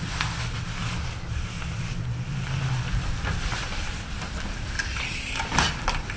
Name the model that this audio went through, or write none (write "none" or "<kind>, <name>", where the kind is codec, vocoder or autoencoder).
vocoder, BigVGAN v2